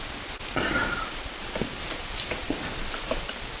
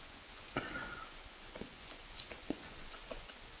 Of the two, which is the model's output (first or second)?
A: second